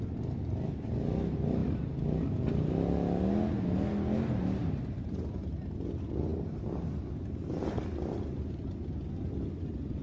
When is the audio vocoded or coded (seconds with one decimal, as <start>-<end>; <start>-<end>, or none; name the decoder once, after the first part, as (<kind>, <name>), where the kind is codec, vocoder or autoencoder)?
4.6-5.5 (vocoder, BigVGAN v2)

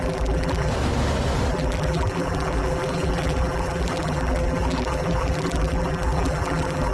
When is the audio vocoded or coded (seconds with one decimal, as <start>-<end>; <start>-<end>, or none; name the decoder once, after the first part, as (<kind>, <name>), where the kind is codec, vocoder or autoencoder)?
0.0-0.7 (vocoder, BigVGAN v2); 1.5-6.9

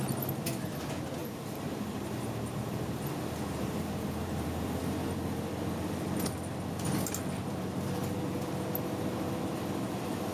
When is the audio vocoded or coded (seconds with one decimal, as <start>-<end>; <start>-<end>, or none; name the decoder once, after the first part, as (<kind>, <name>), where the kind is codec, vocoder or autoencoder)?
1.2-4.8 (vocoder, BigVGAN v2)

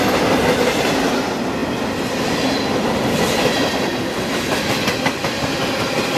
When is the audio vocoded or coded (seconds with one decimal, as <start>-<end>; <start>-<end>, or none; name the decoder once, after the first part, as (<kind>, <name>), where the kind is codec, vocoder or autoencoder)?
none